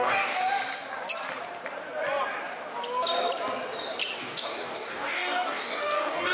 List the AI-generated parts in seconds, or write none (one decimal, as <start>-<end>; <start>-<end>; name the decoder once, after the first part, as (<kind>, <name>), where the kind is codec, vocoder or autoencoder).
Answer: 0.0-0.4 (codec, DAC); 4.2-6.3